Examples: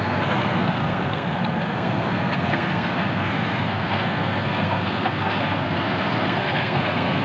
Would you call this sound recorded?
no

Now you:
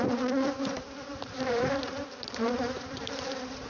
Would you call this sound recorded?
no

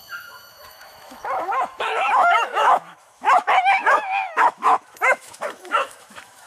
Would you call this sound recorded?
no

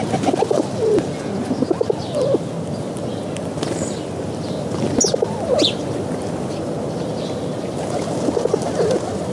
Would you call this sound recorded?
yes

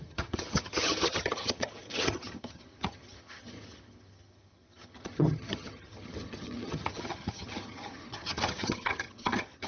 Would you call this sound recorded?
no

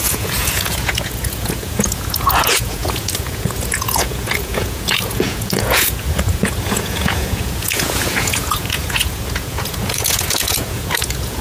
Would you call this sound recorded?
no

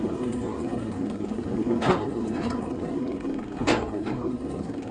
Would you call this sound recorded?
no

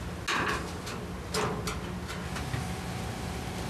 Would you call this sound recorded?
yes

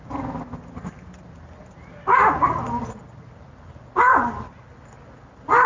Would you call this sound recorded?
yes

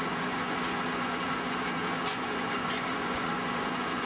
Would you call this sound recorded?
no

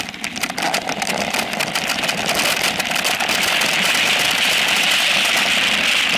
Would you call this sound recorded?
yes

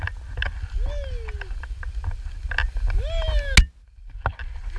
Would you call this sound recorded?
yes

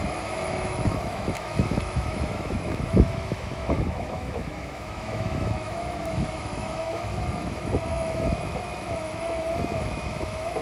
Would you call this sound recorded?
no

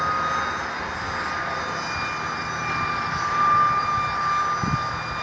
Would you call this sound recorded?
yes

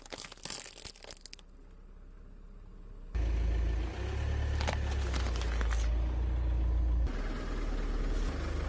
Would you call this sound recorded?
yes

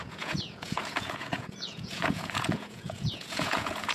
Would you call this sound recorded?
no